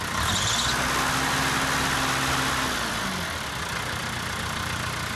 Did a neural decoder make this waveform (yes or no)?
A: no